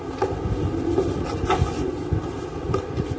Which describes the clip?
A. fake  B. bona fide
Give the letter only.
B